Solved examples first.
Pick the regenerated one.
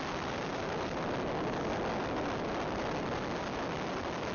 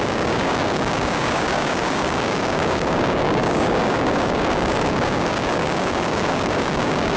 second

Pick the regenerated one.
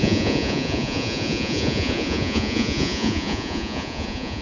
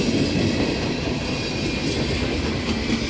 first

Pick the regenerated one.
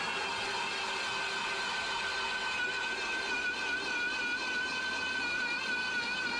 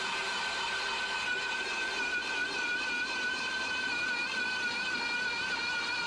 second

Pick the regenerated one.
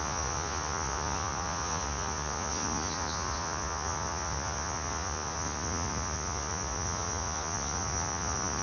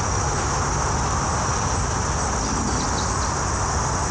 first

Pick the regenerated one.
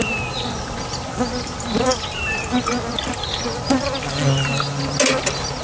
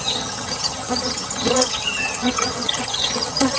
second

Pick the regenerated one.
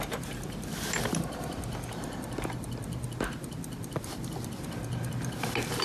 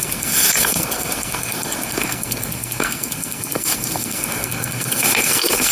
second